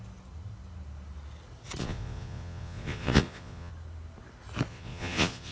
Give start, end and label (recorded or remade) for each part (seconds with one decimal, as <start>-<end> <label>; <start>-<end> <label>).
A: 0.0-1.8 recorded; 1.8-3.7 remade; 3.7-4.7 recorded; 4.7-5.5 remade